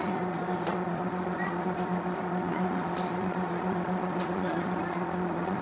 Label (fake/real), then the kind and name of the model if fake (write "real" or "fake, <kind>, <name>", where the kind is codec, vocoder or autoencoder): fake, vocoder, Vocos